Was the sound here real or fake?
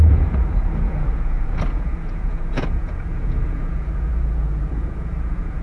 fake